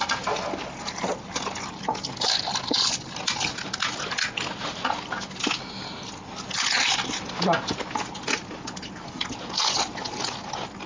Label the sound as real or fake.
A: real